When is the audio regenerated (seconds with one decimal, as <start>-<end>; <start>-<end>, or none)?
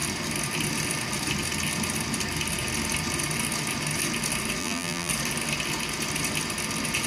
4.6-5.1